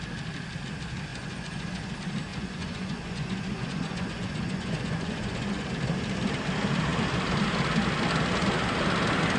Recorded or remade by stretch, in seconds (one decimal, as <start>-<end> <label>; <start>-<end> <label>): 0.0-1.1 recorded; 1.1-1.9 remade; 1.9-2.3 recorded; 2.3-5.7 remade; 5.7-9.4 recorded